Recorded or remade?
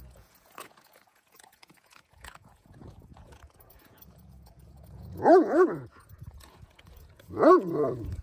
remade